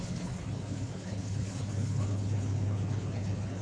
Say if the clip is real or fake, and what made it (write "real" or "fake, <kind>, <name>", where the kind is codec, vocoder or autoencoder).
fake, codec, HILCodec